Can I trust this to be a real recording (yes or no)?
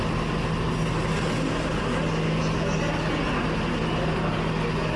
yes